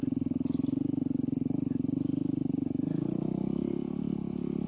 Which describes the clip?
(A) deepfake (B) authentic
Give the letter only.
B